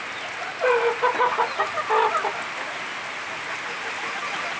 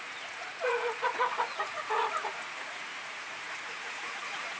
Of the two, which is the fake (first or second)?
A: second